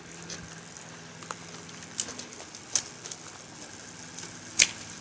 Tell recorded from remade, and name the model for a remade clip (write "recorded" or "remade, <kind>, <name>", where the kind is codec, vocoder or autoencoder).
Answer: recorded